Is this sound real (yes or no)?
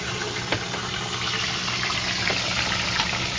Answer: yes